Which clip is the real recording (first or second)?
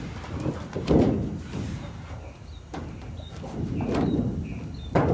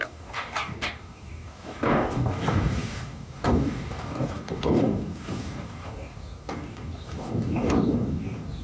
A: first